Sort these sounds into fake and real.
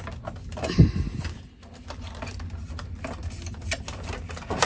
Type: real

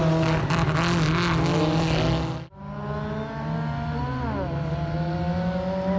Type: real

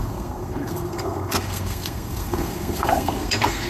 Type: fake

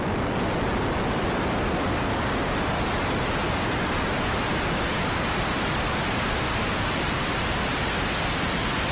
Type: real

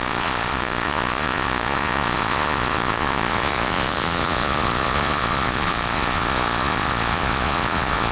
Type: fake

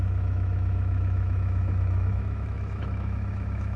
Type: fake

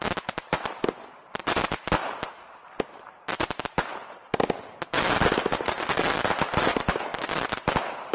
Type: real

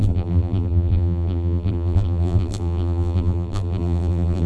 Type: fake